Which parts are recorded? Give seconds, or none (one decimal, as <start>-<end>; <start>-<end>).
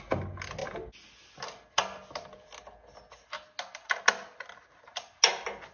0.0-5.7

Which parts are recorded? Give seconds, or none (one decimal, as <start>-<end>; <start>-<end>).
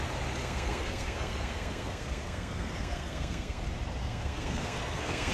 0.0-0.4; 3.6-4.0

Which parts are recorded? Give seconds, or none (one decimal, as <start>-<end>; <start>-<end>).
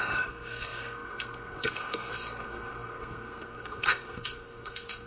none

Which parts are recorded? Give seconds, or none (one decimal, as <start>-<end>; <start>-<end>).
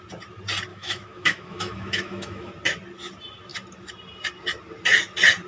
0.0-0.7; 2.5-5.5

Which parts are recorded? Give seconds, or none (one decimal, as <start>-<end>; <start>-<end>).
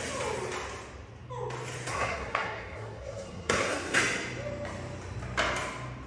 0.0-1.9; 4.0-6.1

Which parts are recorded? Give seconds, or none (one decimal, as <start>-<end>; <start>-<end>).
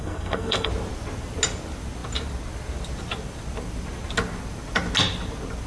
0.7-5.7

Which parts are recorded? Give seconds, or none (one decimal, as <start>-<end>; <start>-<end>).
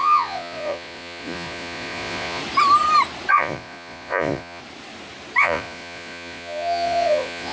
2.4-3.3; 4.6-5.4